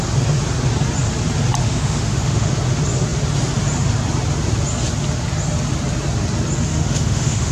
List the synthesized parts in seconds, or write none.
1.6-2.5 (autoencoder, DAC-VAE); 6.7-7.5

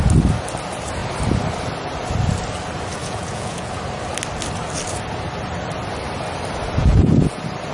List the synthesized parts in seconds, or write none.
3.0-3.7 (vocoder, Vocos); 6.8-7.3

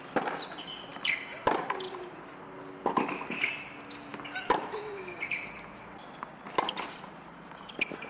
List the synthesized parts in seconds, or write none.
none

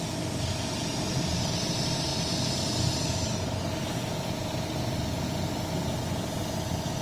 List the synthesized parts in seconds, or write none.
none

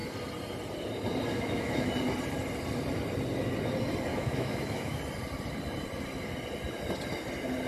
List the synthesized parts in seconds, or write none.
1.3-1.9 (autoencoder, DAC-VAE); 4.1-5.0

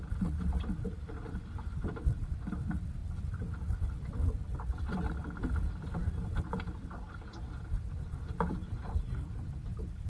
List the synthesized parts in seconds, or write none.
0.0-3.0 (vocoder, BigVGAN v2); 3.5-5.2; 5.7-10.1

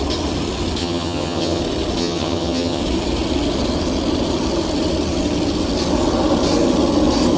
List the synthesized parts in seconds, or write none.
0.8-1.6 (vocoder, HiFi-GAN); 2.0-2.8